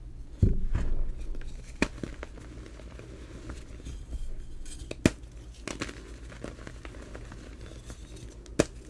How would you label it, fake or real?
real